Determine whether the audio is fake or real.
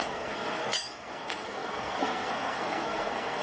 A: fake